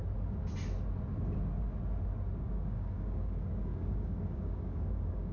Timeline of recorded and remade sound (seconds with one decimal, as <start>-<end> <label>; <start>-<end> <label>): 0.0-2.4 recorded; 2.4-5.3 remade